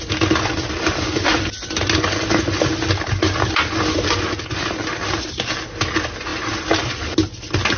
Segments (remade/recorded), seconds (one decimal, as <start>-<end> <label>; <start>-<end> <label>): 0.0-7.8 recorded